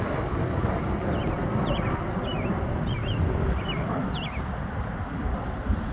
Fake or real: real